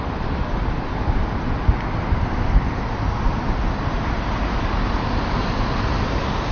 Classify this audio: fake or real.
real